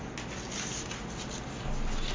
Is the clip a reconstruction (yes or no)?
no